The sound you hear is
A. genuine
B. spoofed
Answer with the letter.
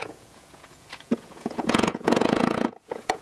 B